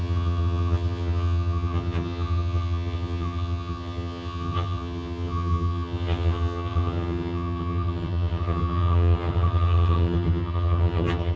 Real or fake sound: fake